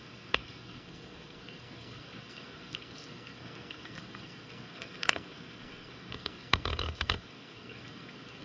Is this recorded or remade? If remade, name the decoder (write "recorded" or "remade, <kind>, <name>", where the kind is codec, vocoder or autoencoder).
remade, codec, SNAC